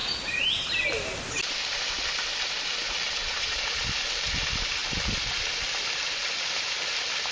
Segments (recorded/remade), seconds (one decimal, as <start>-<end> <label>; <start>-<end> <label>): 0.0-3.2 recorded; 3.2-3.8 remade; 3.8-7.3 recorded

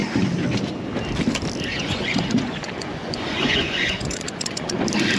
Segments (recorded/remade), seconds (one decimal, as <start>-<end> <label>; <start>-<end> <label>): 0.0-1.7 recorded; 1.7-4.8 remade; 4.8-5.2 recorded

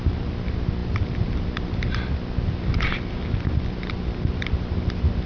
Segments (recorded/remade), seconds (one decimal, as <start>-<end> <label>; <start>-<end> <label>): 0.0-5.3 recorded

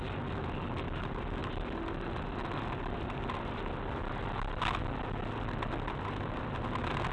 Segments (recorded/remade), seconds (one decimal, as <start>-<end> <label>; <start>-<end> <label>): 0.0-7.1 recorded

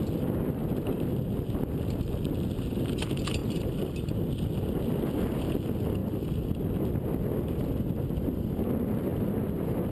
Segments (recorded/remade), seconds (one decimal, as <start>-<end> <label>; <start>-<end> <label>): 0.0-9.9 recorded

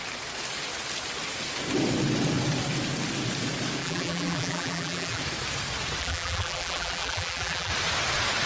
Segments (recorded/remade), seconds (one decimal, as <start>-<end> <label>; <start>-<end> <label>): 0.0-3.8 recorded; 3.8-5.2 remade; 5.2-6.0 recorded; 6.0-7.7 remade; 7.7-8.5 recorded

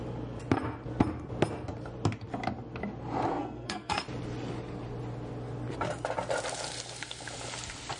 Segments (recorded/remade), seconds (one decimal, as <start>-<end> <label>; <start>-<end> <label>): 0.0-3.3 recorded; 3.3-4.0 remade; 4.0-8.0 recorded

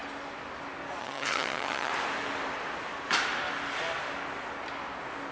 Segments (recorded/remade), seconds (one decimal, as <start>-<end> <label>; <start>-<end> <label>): 0.0-1.0 recorded; 1.0-1.9 remade; 1.9-5.3 recorded